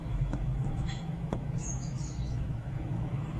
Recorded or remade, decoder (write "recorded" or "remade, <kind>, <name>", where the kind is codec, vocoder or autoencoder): remade, autoencoder, DAC-VAE